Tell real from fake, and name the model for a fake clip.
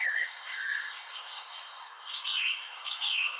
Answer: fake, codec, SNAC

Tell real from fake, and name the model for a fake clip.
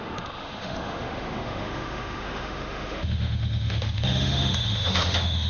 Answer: fake, autoencoder, DAC-VAE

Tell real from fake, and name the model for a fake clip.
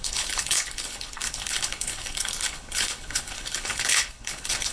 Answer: fake, codec, HILCodec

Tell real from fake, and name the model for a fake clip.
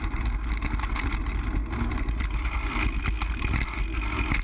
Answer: real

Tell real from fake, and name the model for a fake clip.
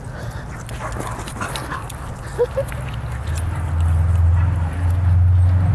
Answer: real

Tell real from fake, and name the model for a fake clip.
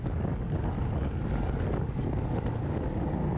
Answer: fake, codec, DAC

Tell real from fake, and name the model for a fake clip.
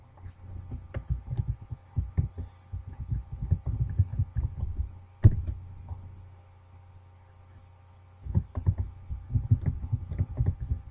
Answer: real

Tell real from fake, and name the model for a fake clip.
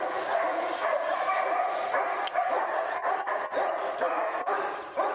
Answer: fake, vocoder, Vocos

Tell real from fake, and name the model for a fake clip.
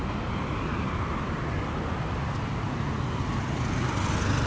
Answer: real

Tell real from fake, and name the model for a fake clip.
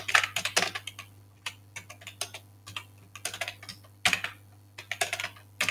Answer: real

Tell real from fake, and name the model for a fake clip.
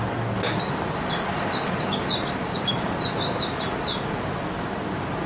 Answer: real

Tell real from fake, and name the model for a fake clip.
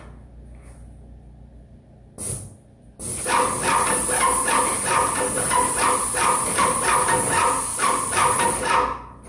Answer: real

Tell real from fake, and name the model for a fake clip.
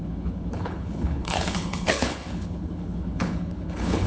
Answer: fake, codec, HILCodec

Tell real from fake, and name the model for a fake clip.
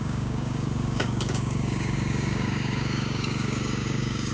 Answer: fake, codec, DAC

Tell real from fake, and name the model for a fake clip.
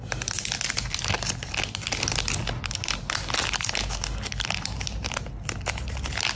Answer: real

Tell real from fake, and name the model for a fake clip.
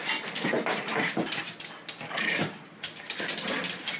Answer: real